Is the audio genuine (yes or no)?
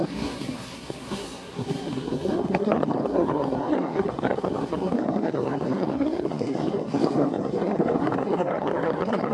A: no